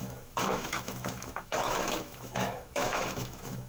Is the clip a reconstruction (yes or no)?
yes